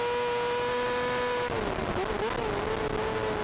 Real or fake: real